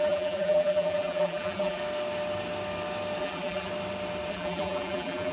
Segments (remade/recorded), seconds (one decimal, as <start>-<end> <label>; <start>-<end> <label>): 0.0-1.8 remade; 1.8-3.2 recorded; 3.2-3.7 remade; 3.7-4.3 recorded; 4.3-5.3 remade